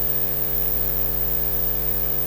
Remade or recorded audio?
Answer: remade